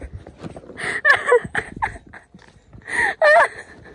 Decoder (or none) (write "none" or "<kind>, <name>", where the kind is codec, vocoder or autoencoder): none